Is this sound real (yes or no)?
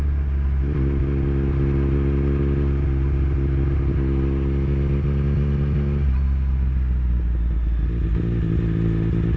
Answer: yes